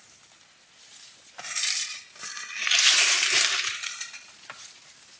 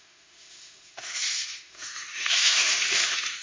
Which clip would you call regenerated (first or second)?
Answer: second